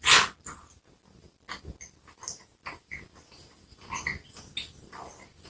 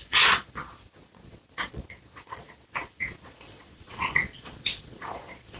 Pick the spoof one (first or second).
second